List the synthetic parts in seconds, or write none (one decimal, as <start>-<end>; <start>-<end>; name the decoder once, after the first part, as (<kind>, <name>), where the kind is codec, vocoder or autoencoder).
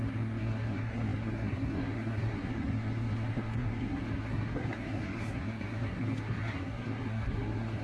0.0-7.8 (codec, SNAC)